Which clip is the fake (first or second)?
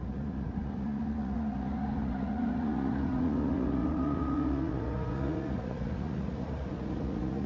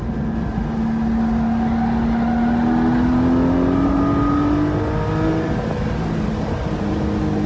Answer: first